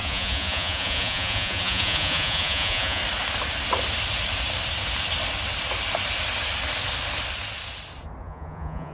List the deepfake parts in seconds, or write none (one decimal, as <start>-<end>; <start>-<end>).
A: 0.0-3.0; 8.2-8.9